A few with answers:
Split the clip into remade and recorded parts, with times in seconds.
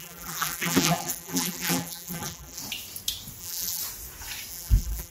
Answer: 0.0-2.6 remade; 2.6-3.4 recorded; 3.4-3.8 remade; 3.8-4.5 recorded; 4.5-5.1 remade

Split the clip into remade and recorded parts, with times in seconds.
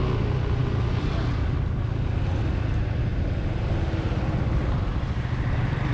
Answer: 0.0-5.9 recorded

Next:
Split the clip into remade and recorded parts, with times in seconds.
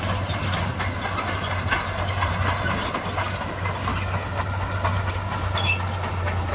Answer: 0.0-6.5 recorded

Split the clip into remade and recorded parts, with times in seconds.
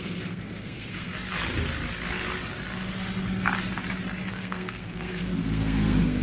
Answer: 0.0-1.1 remade; 1.1-4.3 recorded; 4.3-6.2 remade